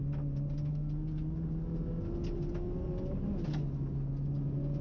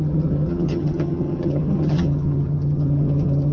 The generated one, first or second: second